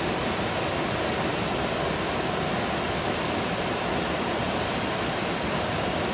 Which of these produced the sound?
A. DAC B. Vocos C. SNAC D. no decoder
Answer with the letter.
D